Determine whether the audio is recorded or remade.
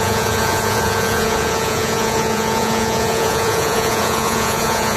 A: remade